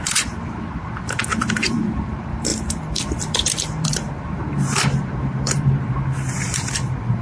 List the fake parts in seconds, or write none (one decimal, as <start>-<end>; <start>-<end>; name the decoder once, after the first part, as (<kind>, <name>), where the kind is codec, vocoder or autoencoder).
0.0-7.2 (vocoder, BigVGAN v2)